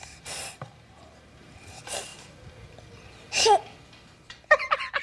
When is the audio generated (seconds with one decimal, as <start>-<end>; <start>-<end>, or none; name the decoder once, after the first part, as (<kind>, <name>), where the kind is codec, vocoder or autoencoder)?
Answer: 0.0-2.1 (vocoder, BigVGAN v2); 4.5-5.0